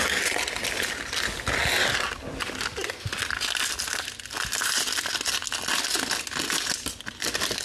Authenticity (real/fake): real